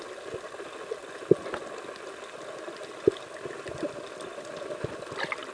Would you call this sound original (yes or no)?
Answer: yes